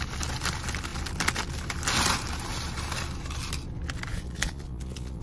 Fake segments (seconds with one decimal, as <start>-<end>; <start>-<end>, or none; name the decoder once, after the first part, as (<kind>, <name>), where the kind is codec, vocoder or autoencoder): 4.1-5.2 (vocoder, Vocos)